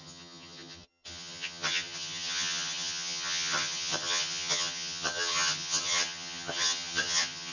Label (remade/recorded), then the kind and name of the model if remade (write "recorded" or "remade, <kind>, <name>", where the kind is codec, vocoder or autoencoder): remade, vocoder, HiFi-GAN